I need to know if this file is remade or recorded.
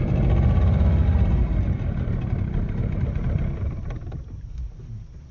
recorded